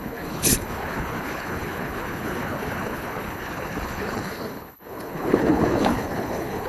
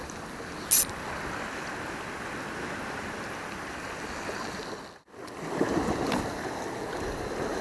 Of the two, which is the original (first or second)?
second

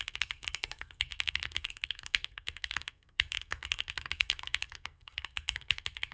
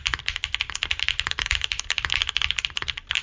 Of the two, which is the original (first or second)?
second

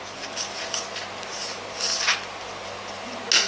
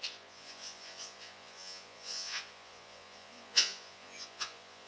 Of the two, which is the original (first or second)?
first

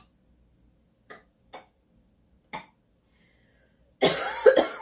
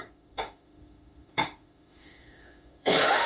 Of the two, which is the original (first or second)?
first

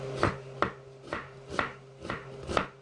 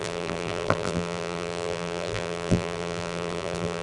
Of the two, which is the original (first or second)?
first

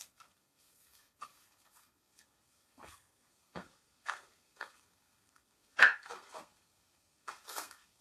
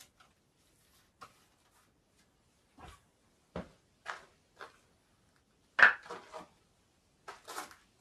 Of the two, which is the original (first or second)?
second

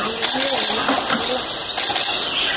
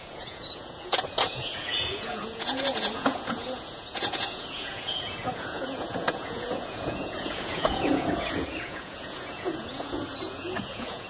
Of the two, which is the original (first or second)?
first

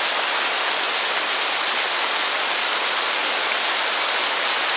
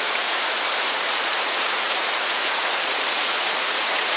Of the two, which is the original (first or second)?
first